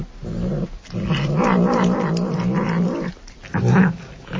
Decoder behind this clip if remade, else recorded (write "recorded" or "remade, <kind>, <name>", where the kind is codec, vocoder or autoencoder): recorded